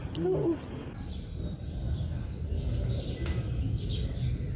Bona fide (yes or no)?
yes